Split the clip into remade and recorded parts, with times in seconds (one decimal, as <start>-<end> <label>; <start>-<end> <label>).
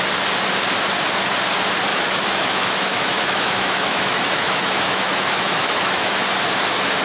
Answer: 0.0-1.9 recorded; 1.9-6.1 remade; 6.1-7.0 recorded